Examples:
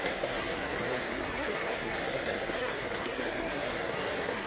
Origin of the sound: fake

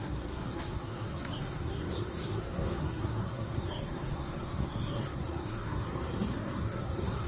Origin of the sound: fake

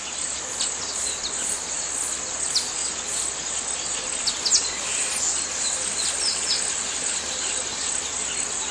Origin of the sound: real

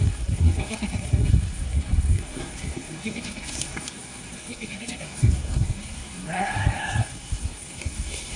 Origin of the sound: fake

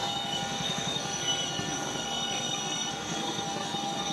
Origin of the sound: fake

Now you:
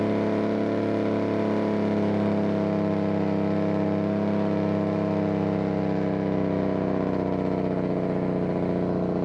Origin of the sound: real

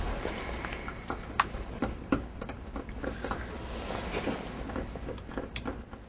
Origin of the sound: real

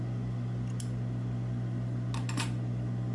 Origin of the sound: real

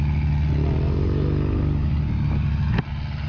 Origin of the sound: real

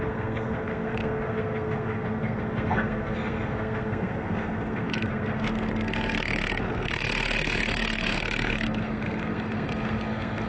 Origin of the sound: fake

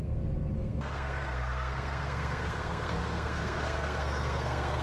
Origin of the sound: fake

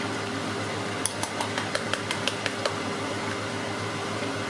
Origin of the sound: real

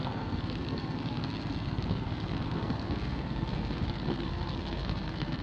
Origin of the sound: fake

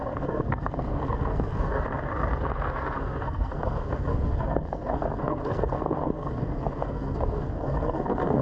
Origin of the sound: fake